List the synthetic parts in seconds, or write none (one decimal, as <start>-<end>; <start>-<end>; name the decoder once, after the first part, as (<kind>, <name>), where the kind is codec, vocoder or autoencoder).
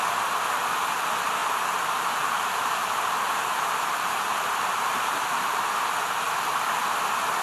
1.4-5.8 (vocoder, BigVGAN v2)